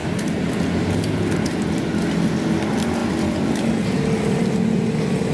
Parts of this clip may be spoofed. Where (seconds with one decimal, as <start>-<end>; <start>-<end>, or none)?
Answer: none